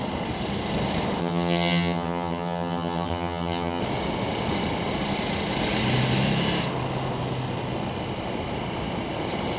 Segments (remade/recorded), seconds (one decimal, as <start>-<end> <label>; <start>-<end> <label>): 0.0-1.2 recorded; 1.2-3.8 remade; 3.8-9.6 recorded